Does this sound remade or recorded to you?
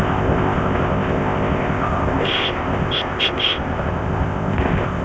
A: remade